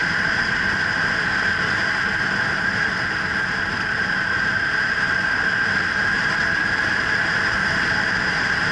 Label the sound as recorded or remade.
recorded